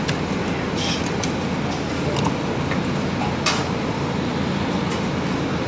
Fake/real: real